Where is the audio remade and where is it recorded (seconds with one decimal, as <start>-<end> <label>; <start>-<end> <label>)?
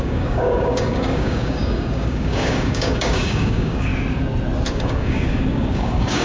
0.0-3.9 remade; 3.9-4.7 recorded; 4.7-6.2 remade